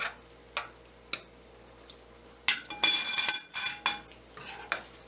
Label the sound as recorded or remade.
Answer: recorded